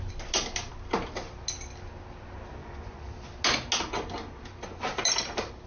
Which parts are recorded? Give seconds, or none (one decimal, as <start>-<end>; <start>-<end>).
0.0-2.6; 3.1-5.7